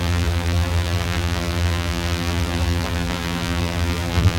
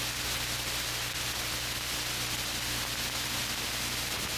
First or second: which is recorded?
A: second